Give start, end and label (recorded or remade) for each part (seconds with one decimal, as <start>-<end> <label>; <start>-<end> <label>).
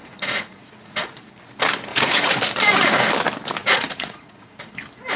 0.0-1.3 remade; 1.3-1.9 recorded; 1.9-2.4 remade; 2.4-3.6 recorded; 3.6-4.7 remade; 4.7-5.2 recorded